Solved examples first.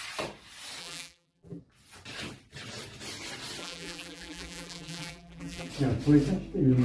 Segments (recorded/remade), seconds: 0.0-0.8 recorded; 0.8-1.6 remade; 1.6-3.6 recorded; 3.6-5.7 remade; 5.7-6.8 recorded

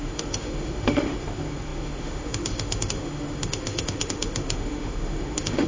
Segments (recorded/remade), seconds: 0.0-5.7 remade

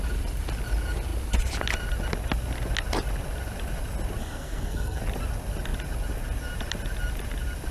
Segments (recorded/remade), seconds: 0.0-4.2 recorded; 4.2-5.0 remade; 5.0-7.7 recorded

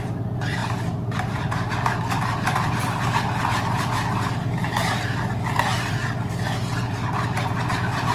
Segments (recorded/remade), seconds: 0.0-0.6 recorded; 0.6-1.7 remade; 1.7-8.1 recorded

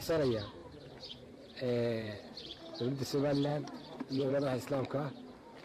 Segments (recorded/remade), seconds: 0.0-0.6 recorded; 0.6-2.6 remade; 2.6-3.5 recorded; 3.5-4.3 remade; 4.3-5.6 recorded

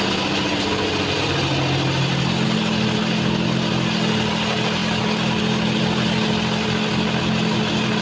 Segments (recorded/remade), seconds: 0.0-8.0 recorded

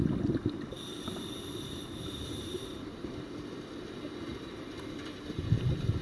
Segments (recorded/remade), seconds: 0.0-0.7 recorded; 0.7-2.9 remade; 2.9-4.3 recorded; 4.3-6.0 remade

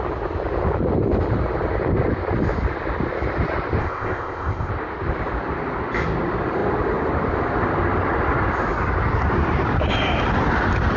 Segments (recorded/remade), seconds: 0.0-3.8 recorded; 3.8-4.7 remade; 4.7-11.0 recorded